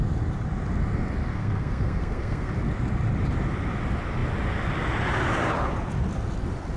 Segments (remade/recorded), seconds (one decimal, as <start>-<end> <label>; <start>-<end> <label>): 0.0-1.3 recorded; 1.3-2.5 remade; 2.5-6.8 recorded